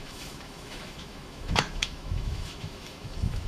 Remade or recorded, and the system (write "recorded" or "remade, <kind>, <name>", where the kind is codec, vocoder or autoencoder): remade, autoencoder, DAC-VAE